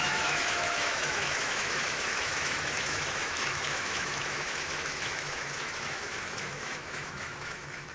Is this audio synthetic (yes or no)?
yes